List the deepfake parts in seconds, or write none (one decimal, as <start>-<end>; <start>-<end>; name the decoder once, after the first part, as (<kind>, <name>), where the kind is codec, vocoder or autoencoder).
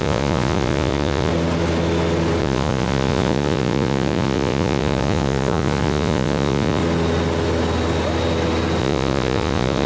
0.0-1.3 (vocoder, Vocos); 2.4-6.8; 8.8-9.9